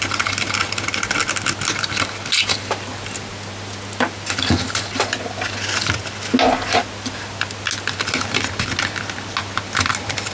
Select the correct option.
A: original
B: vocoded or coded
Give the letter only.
A